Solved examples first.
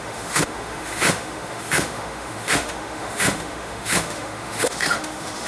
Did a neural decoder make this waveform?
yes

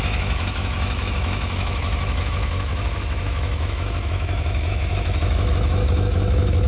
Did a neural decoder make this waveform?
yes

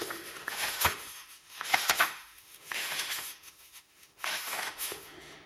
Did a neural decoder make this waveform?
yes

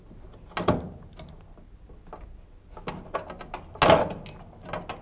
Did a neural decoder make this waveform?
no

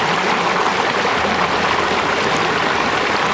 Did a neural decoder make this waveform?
no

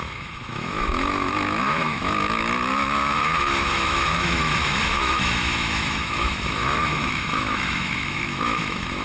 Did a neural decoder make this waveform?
yes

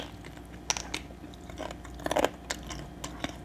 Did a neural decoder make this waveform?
no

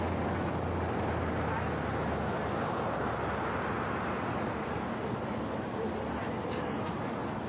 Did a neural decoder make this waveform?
no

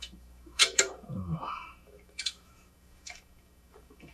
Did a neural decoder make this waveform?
yes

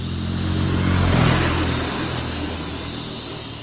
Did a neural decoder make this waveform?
no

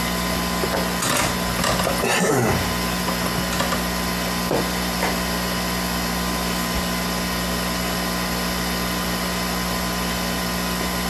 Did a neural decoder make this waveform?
no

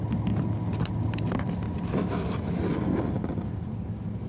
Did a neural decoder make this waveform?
no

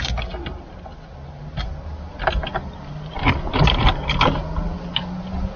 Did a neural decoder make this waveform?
no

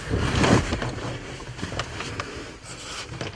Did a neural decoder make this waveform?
no